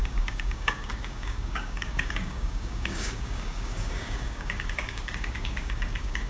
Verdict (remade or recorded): remade